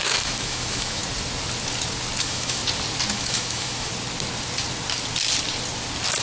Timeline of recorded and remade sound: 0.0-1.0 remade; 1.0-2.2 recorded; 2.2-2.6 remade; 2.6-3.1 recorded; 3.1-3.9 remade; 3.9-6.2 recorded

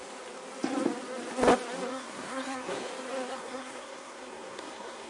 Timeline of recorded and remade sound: 0.0-1.9 recorded; 1.9-2.9 remade; 2.9-3.3 recorded; 3.3-5.1 remade

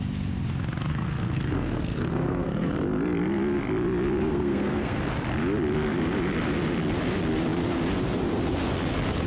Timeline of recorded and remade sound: 0.0-0.9 recorded; 0.9-2.7 remade; 2.7-4.3 recorded; 4.3-5.0 remade; 5.0-9.3 recorded

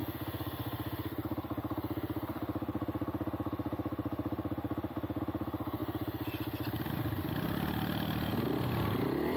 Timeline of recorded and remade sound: 0.0-9.4 recorded

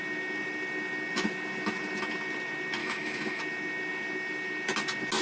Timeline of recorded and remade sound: 0.0-2.8 recorded; 2.8-3.4 remade; 3.4-5.2 recorded

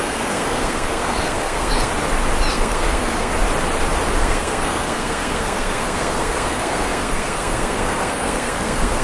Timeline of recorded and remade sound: 0.0-1.9 remade; 1.9-2.5 recorded; 2.5-3.3 remade; 3.3-4.2 recorded; 4.2-9.0 remade